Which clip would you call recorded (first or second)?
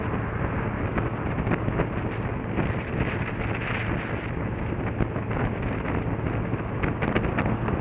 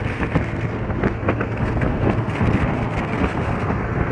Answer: first